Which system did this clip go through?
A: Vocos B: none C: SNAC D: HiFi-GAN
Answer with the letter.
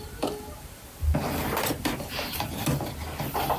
B